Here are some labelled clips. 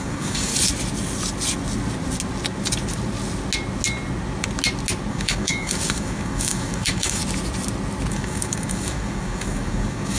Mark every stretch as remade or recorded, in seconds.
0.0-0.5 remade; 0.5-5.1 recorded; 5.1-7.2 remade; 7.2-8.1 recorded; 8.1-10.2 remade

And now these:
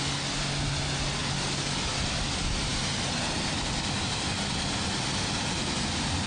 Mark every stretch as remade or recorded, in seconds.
0.0-6.3 recorded

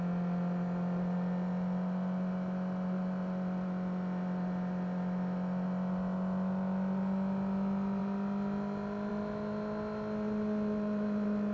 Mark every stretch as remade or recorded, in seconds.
0.0-11.5 recorded